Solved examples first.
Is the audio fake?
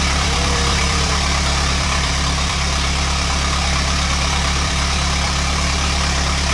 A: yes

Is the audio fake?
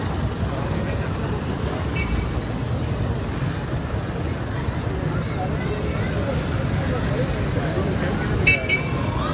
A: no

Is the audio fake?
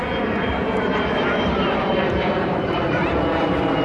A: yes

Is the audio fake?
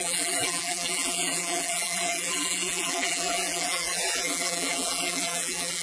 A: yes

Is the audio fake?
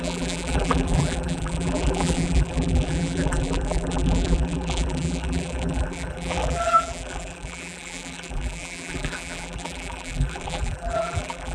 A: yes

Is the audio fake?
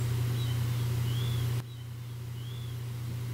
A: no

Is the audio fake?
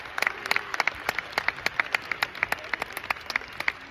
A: no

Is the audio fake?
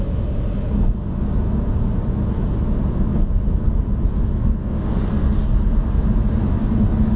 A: no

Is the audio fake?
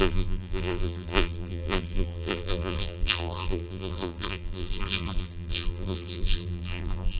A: yes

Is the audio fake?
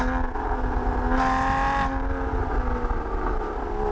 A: no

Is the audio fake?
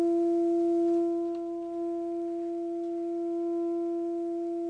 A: no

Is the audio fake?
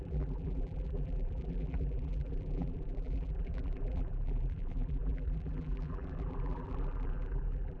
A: yes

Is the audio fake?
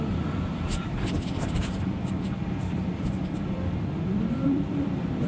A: yes